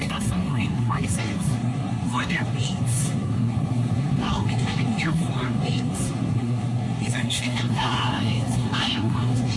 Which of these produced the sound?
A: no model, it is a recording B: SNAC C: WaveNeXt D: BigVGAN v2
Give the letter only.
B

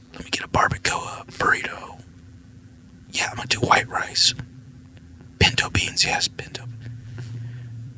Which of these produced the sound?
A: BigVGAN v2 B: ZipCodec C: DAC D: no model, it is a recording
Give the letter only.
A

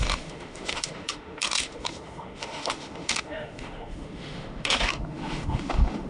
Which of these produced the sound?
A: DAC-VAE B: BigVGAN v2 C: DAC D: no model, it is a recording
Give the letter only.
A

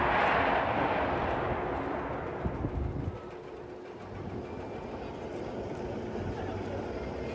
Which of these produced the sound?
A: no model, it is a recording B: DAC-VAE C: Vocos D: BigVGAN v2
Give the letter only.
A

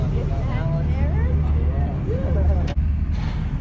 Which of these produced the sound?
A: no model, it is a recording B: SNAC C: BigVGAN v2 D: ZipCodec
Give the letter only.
A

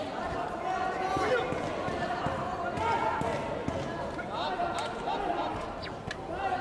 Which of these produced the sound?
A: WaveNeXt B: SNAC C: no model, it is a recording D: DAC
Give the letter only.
C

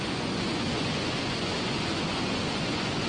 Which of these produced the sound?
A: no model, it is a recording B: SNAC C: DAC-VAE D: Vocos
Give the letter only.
D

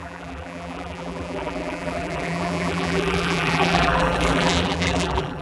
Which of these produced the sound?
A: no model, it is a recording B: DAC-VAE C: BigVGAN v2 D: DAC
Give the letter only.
C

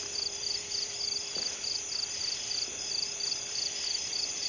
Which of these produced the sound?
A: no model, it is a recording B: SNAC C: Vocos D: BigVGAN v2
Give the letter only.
D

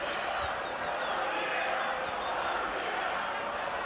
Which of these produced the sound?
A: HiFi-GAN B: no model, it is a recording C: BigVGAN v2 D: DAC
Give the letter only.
B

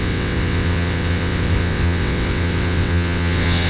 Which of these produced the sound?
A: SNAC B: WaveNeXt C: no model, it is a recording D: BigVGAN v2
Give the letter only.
B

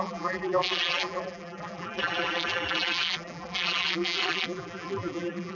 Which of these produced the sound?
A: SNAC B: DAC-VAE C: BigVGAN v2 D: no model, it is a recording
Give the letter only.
C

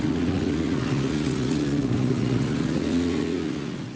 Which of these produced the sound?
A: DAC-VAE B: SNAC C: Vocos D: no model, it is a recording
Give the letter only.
C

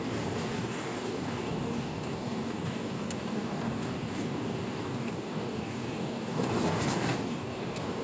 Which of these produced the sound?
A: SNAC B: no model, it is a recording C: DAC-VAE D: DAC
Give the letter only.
D